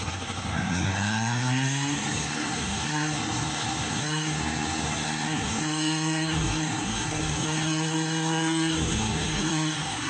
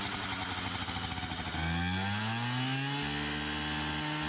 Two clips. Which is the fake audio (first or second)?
first